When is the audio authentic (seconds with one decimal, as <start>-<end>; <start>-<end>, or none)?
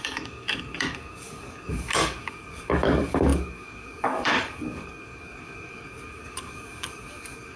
none